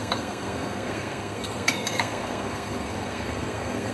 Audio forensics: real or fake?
fake